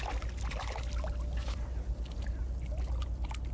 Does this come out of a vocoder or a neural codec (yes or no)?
no